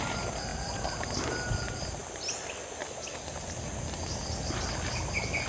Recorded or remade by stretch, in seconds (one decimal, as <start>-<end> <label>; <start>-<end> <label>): 0.0-5.5 recorded